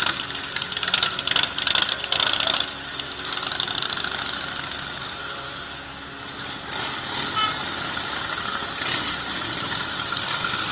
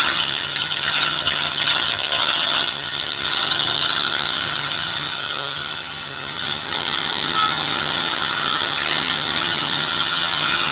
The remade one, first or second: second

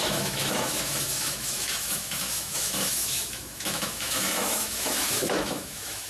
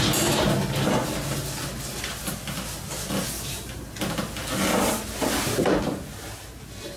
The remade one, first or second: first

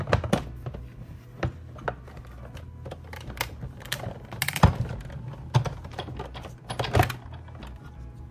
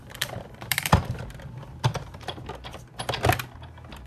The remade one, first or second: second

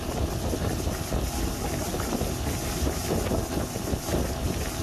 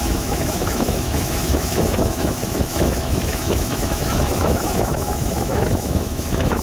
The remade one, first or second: second